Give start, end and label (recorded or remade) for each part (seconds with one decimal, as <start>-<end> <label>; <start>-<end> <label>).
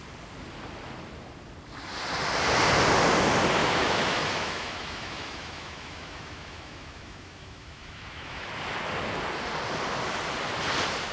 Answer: 0.0-3.6 recorded; 3.6-8.5 remade; 8.5-11.1 recorded